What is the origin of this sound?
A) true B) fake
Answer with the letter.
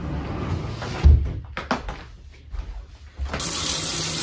A